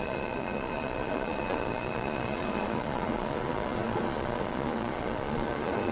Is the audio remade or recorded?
remade